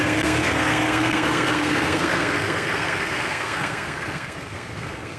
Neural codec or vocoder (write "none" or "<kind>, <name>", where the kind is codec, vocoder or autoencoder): codec, SNAC